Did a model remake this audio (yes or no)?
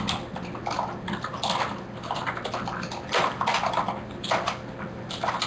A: no